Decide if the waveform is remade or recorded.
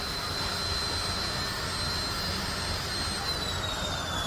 recorded